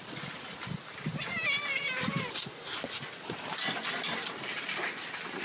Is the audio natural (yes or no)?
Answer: yes